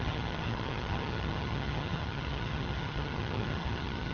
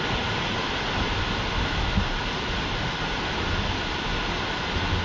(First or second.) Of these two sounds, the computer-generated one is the first